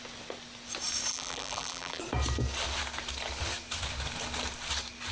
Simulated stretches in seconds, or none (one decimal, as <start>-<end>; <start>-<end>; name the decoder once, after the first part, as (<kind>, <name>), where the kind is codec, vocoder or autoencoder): 1.1-2.0 (vocoder, BigVGAN v2)